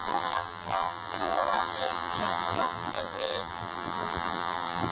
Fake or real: fake